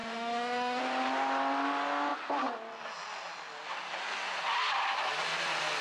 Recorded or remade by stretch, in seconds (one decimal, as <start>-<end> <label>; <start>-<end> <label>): 0.0-0.8 remade; 0.8-5.8 recorded